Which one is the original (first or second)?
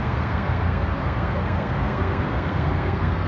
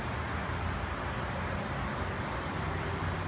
second